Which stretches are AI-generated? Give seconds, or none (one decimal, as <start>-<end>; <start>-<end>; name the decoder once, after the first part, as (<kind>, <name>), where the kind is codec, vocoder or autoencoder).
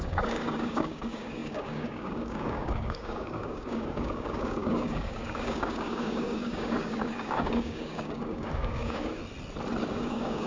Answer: 0.0-9.2 (codec, DAC); 9.9-10.5